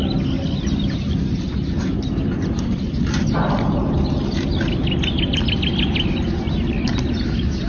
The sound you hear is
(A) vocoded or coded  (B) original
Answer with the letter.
B